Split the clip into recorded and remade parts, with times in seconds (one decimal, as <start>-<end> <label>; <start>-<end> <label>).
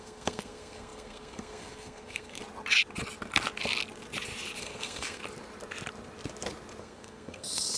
0.0-2.4 remade; 2.4-4.6 recorded; 4.6-5.2 remade; 5.2-6.8 recorded; 6.8-7.8 remade